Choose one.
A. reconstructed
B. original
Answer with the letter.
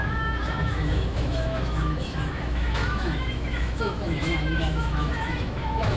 A